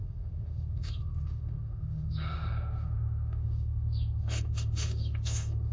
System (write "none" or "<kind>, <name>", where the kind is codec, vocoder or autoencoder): autoencoder, DAC-VAE